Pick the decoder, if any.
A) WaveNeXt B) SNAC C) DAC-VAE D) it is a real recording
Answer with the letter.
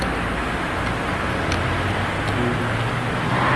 D